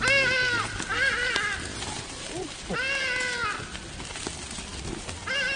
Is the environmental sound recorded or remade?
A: recorded